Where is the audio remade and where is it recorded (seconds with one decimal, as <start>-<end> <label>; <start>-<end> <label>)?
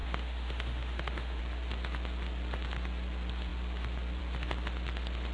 0.0-1.4 remade; 1.4-5.3 recorded